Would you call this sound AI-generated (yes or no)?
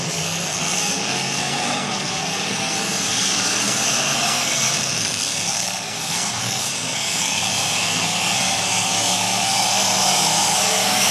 yes